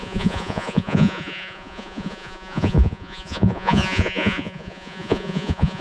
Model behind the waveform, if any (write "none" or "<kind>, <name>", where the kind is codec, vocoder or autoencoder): vocoder, Vocos